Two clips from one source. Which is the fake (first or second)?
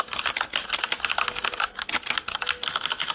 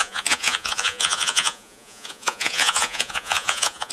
second